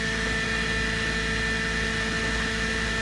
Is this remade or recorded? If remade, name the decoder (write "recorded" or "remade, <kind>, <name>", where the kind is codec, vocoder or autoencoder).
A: recorded